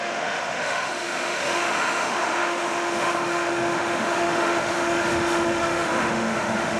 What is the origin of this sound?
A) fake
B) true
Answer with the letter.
A